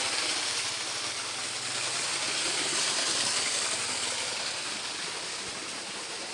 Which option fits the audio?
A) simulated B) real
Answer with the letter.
B